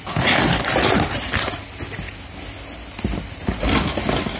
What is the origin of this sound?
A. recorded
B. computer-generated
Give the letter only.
A